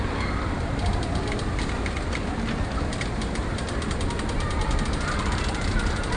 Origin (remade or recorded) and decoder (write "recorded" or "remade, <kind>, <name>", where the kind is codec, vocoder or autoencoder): recorded